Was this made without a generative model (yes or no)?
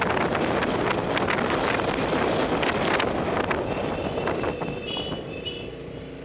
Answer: yes